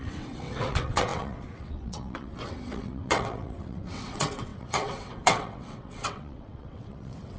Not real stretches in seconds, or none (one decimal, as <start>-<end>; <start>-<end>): 0.0-7.4

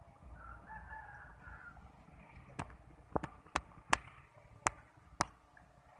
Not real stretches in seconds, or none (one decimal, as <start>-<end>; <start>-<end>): none

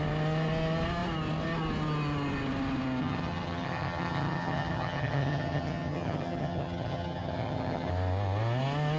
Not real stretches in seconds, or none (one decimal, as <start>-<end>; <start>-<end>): 3.0-7.9

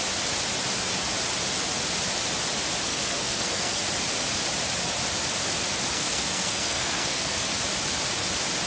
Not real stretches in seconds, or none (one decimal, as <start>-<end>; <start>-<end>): 2.9-3.8; 5.9-7.4

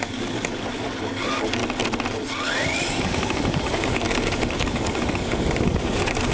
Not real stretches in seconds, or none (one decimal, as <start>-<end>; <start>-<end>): 0.0-1.6; 3.0-6.3